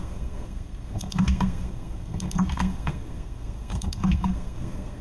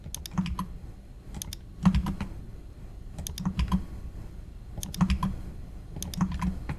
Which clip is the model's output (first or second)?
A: first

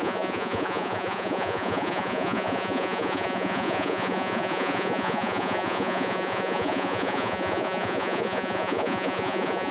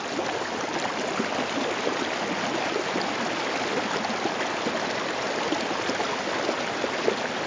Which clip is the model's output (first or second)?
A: first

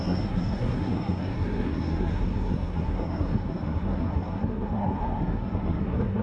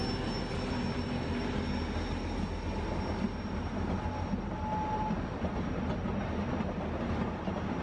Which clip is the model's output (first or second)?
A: first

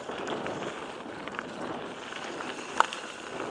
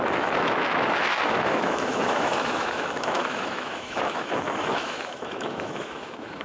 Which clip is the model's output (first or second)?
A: second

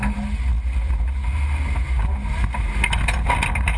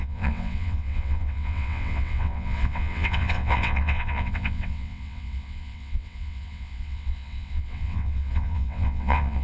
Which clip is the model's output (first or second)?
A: second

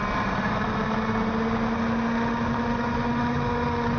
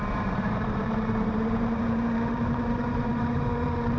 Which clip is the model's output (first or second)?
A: second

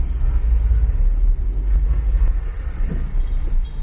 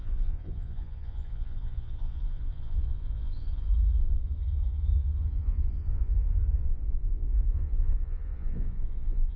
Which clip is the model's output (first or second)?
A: second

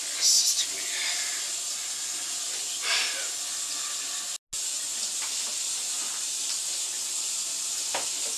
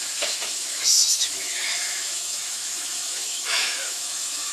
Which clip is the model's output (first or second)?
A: second